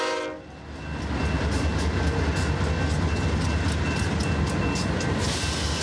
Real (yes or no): yes